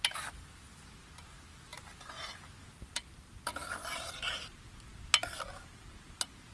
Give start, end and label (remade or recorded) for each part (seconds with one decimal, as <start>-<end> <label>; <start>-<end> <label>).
0.0-6.5 recorded

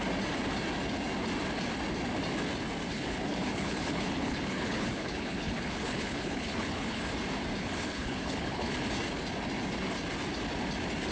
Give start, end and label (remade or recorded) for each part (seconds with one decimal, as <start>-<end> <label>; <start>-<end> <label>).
0.0-2.9 recorded; 2.9-7.0 remade; 7.0-7.6 recorded; 7.6-8.7 remade; 8.7-11.1 recorded

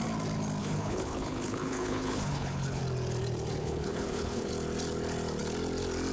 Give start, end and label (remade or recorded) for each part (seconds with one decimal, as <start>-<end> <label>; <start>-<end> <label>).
0.0-0.6 recorded; 0.6-2.8 remade; 2.8-3.6 recorded; 3.6-4.5 remade; 4.5-6.1 recorded

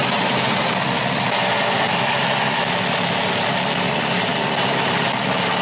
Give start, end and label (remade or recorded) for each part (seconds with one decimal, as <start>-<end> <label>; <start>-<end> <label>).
0.0-5.6 recorded

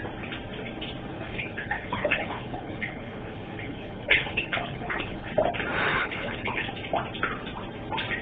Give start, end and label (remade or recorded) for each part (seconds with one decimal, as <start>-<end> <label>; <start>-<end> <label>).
0.0-1.1 recorded; 1.1-5.3 remade; 5.3-5.9 recorded; 5.9-6.7 remade; 6.7-8.2 recorded

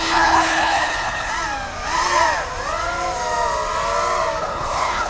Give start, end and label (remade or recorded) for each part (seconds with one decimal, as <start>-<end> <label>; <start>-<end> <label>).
0.0-1.3 remade; 1.3-4.4 recorded; 4.4-5.1 remade